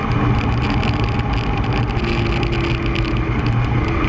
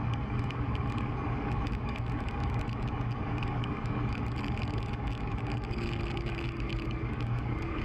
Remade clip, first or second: second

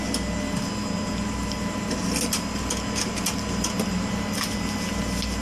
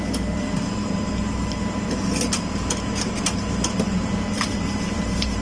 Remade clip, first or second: second